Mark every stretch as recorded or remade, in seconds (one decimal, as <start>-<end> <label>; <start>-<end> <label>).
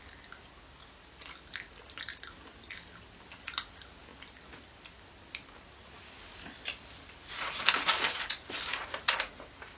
0.0-9.8 recorded